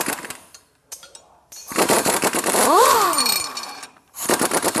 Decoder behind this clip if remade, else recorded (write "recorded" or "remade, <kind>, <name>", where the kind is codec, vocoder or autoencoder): remade, vocoder, BigVGAN v2